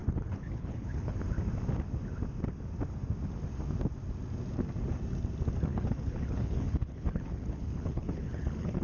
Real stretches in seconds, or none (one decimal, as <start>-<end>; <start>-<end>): 1.2-5.7